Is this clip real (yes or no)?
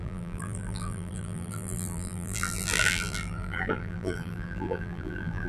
no